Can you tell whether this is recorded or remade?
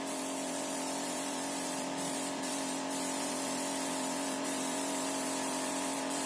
remade